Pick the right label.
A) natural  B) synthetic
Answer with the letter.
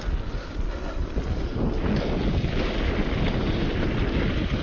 A